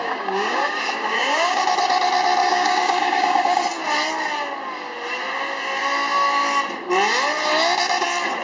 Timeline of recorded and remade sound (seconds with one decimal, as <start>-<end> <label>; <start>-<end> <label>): 0.0-1.6 remade; 1.6-2.4 recorded; 2.4-3.6 remade; 3.6-8.4 recorded